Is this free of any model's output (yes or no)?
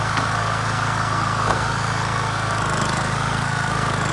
no